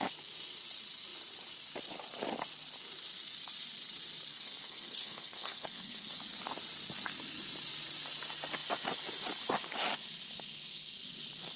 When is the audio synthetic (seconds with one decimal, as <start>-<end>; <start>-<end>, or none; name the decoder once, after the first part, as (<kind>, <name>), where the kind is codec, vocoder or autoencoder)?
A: 4.3-6.2 (codec, HILCodec)